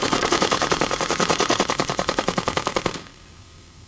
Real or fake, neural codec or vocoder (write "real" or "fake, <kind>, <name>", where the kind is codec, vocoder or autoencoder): fake, codec, SNAC